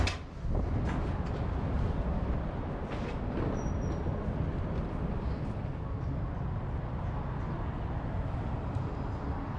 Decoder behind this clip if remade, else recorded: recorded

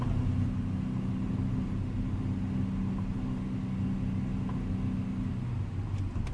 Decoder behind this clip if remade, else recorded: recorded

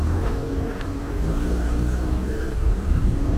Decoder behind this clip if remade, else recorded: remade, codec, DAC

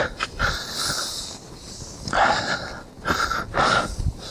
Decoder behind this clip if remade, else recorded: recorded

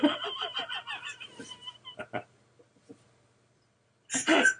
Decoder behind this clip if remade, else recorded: recorded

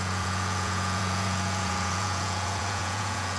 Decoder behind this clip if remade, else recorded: remade, vocoder, Vocos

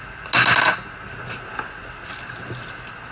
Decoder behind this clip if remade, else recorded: recorded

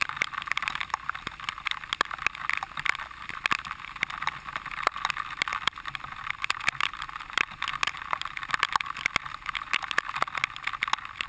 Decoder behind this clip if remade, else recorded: recorded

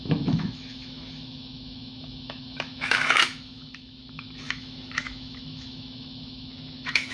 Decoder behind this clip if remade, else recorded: remade, autoencoder, DAC-VAE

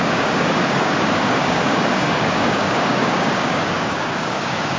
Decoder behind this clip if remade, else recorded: remade, codec, DAC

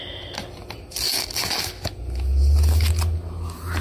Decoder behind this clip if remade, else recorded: recorded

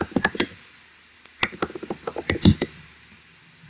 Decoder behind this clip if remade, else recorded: recorded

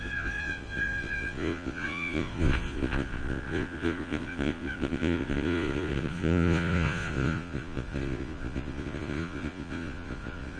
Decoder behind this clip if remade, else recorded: remade, vocoder, Vocos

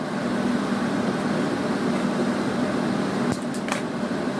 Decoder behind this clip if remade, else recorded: recorded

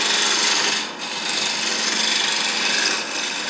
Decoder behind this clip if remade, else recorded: recorded